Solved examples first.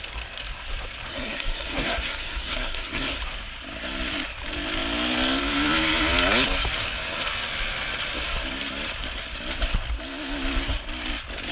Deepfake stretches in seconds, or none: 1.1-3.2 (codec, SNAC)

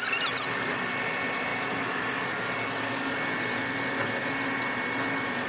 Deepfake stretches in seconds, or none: none

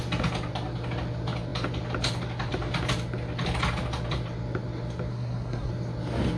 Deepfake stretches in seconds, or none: 5.1-5.7 (codec, SNAC)

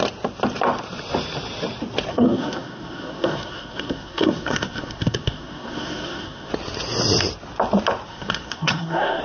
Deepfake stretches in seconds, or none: 2.1-6.5 (codec, SNAC); 8.1-9.2

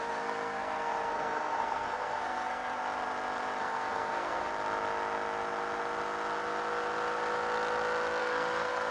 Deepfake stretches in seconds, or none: 0.0-2.8 (codec, SNAC); 3.6-4.5; 8.2-8.9